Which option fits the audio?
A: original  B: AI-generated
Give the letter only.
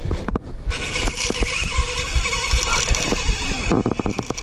A